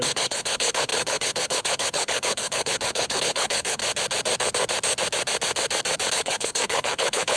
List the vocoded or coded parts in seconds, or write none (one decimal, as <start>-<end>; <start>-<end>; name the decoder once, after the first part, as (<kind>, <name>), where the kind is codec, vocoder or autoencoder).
0.0-3.8 (codec, HILCodec); 6.1-7.4